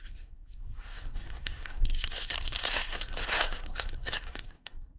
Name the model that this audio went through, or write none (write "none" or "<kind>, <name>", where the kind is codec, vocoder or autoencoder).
codec, SNAC